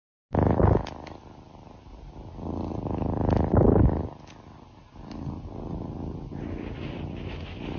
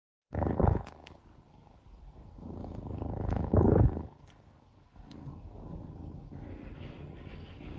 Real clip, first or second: first